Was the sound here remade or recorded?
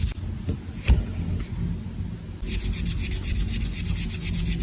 recorded